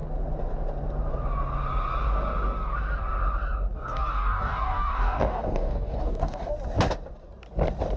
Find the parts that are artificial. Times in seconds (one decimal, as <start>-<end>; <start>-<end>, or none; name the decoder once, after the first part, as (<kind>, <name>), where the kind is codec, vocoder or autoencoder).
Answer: 3.7-6.5 (codec, DAC)